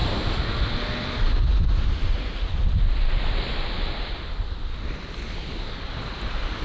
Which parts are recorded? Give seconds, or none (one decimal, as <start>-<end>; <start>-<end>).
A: 0.0-6.6